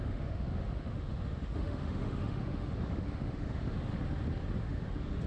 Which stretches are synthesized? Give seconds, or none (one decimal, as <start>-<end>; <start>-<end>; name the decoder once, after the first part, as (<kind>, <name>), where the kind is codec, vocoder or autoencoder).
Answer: 0.0-3.9 (autoencoder, DAC-VAE); 4.6-5.3